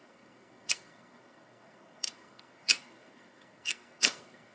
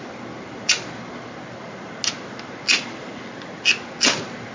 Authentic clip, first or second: second